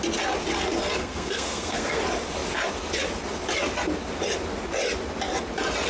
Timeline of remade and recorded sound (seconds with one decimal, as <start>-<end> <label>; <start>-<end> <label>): 0.0-1.0 recorded; 1.0-2.0 remade; 2.0-5.9 recorded